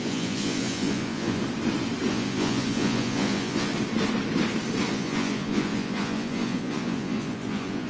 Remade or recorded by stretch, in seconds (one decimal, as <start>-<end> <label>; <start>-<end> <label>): 0.0-1.4 remade; 1.4-2.1 recorded; 2.1-3.7 remade; 3.7-4.9 recorded; 4.9-7.9 remade